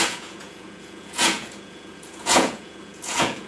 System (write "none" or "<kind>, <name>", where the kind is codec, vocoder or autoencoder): vocoder, Vocos